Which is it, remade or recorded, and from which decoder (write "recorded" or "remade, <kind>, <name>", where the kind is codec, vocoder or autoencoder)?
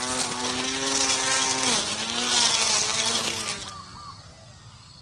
recorded